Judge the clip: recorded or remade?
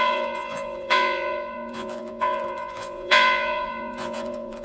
remade